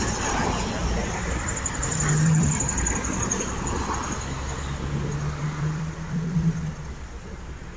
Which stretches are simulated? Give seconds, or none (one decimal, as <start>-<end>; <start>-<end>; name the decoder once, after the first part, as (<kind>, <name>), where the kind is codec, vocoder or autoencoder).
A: 0.8-3.5 (vocoder, BigVGAN v2); 5.4-7.0